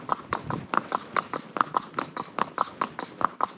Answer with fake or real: real